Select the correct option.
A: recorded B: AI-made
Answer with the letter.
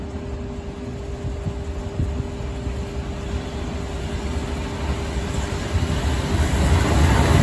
A